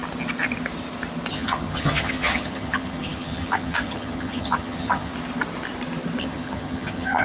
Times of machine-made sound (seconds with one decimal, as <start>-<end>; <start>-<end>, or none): 1.3-5.1; 6.2-7.2